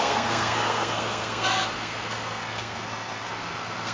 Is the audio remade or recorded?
remade